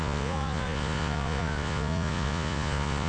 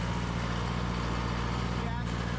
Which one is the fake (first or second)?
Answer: first